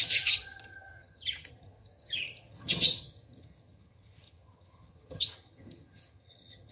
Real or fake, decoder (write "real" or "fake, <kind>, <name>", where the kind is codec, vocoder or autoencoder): fake, vocoder, HiFi-GAN